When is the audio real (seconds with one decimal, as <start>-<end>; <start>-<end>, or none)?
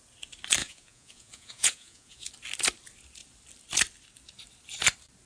0.0-0.6; 2.3-5.3